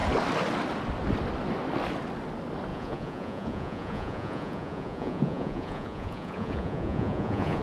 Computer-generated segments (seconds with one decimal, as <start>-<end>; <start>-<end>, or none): 2.7-7.6